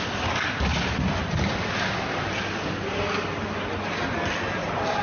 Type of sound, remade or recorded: recorded